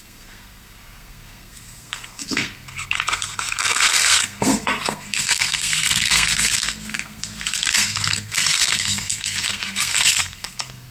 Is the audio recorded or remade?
remade